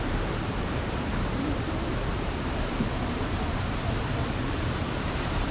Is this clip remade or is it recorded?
remade